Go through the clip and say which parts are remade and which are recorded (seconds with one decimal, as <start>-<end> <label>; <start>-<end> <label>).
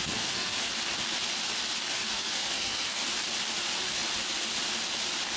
0.0-0.7 remade; 0.7-2.0 recorded; 2.0-3.0 remade; 3.0-5.4 recorded